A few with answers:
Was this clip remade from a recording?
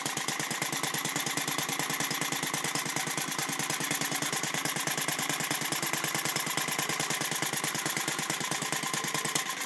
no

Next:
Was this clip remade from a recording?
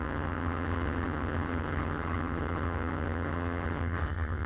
yes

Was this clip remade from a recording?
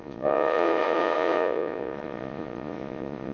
yes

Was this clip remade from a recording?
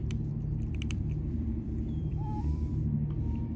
yes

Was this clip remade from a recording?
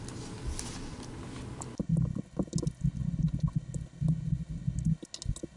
no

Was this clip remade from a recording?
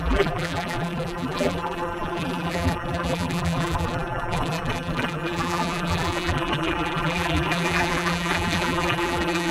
yes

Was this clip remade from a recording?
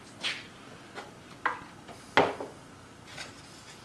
no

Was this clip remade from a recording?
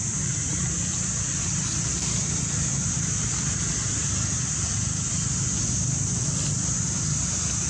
no